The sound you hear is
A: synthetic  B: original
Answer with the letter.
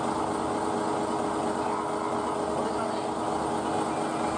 B